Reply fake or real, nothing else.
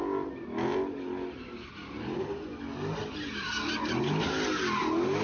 real